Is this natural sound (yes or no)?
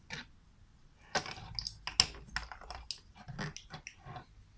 yes